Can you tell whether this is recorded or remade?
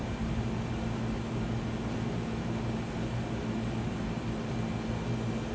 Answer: recorded